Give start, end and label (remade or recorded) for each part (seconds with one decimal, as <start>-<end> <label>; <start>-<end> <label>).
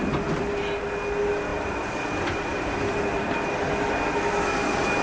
0.0-1.5 recorded; 1.5-3.3 remade; 3.3-5.0 recorded